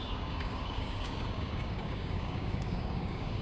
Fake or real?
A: fake